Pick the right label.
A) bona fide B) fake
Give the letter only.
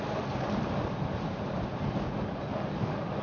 A